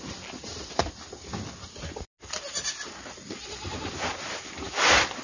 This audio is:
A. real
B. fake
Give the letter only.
A